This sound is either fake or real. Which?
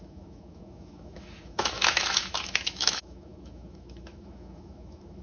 fake